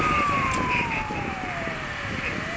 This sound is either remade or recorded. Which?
remade